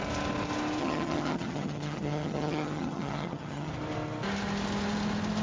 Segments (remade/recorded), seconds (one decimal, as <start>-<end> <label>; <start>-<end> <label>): 0.0-0.8 recorded; 0.8-3.7 remade; 3.7-5.4 recorded